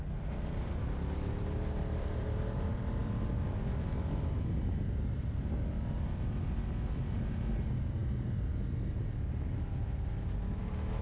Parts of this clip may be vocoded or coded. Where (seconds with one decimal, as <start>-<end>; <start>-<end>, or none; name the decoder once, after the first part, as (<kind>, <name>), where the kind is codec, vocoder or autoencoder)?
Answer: 3.0-7.3 (vocoder, BigVGAN v2)